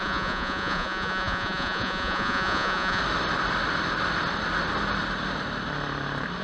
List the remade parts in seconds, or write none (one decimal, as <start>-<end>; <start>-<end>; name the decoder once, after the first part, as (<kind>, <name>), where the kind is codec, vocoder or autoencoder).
0.0-3.0 (vocoder, Vocos)